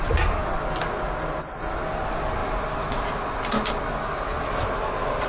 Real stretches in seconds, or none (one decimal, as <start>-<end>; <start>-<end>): 0.0-5.3

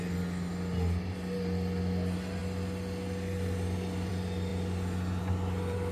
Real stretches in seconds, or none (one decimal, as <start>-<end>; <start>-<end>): 0.0-5.9

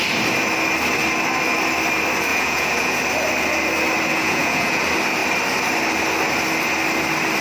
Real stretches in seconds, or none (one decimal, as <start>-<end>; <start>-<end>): 0.0-2.3; 3.0-4.1; 4.8-7.4

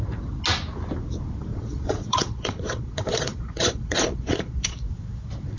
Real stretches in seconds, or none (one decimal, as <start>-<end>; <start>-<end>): 0.0-1.5; 4.9-5.6

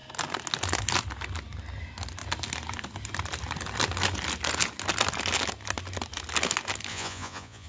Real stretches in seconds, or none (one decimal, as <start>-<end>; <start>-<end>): 0.0-6.9

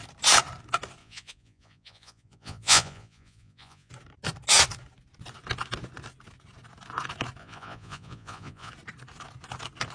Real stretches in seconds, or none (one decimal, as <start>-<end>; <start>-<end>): 0.0-1.0; 3.9-7.4; 8.7-9.9

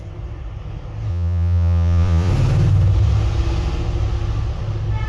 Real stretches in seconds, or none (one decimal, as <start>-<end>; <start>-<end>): 0.0-1.1; 2.3-5.1

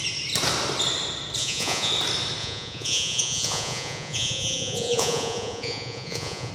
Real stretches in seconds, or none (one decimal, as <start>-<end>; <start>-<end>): 0.0-1.4; 1.9-2.4